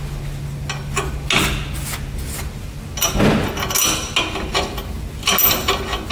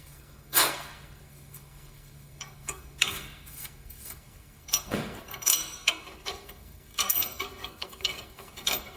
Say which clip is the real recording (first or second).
first